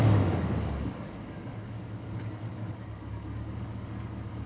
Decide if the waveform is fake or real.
fake